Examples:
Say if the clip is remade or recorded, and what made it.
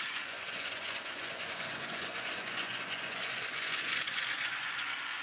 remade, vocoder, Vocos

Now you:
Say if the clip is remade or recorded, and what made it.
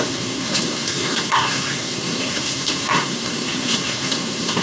remade, codec, SNAC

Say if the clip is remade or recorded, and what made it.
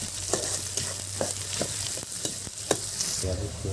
recorded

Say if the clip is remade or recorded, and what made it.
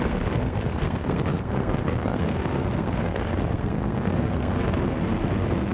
remade, codec, SNAC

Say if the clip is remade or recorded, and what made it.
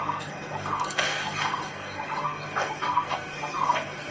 remade, codec, SNAC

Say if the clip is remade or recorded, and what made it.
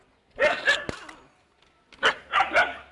recorded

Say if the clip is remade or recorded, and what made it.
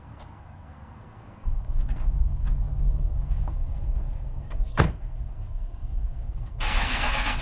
remade, codec, SNAC